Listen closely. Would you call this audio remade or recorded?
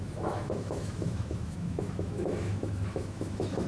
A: remade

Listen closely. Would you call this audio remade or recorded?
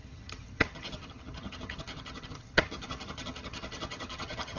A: remade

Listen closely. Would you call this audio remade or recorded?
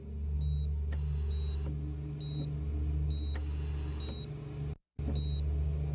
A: recorded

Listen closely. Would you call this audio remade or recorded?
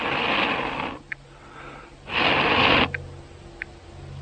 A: recorded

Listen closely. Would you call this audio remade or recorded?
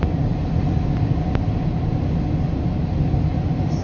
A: recorded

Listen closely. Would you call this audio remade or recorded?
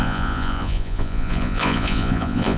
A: remade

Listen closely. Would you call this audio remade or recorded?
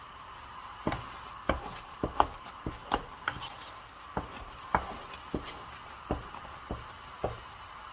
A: recorded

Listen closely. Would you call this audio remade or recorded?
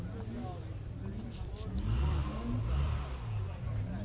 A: recorded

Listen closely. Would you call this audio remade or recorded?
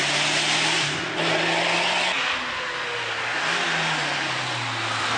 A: recorded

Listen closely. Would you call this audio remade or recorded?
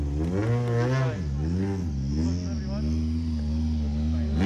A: recorded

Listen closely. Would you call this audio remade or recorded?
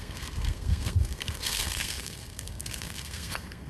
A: remade